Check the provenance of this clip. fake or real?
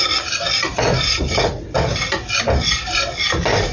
real